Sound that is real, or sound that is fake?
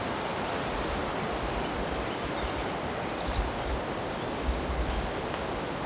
real